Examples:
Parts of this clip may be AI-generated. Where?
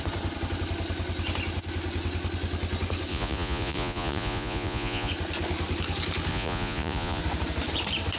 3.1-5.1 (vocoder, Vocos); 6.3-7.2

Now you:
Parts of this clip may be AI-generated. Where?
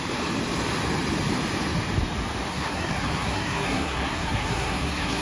2.5-5.2 (codec, SNAC)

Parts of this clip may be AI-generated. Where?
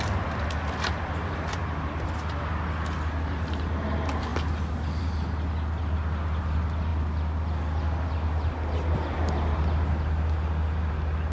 none